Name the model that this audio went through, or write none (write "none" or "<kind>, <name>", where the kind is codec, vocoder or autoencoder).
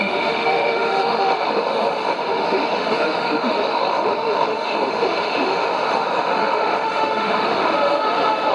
autoencoder, DAC-VAE